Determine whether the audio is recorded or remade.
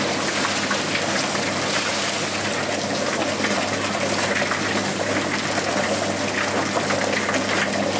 recorded